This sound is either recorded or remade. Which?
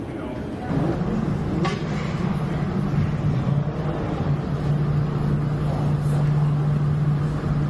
recorded